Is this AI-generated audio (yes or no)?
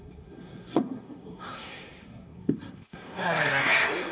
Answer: yes